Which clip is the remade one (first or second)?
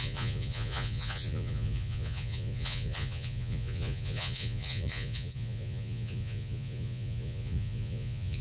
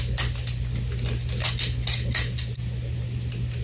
first